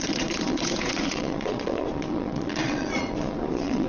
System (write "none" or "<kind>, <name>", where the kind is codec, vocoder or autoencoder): vocoder, Vocos